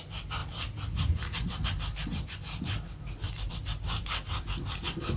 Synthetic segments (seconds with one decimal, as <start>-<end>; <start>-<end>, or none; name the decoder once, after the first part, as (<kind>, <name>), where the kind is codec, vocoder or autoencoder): none